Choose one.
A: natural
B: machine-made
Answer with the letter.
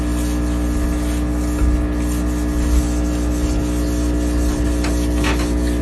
A